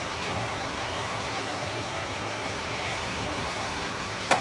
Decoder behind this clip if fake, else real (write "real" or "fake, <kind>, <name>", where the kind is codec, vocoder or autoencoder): fake, codec, SNAC